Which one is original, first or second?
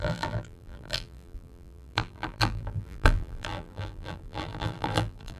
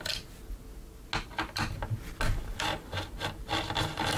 second